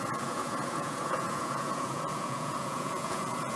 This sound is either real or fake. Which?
fake